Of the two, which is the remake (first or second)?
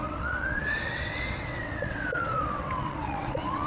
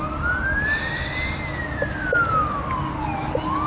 first